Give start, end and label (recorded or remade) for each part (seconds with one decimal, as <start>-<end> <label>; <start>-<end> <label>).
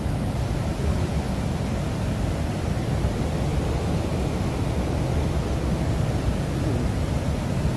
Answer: 0.0-3.5 recorded; 3.5-6.7 remade; 6.7-7.8 recorded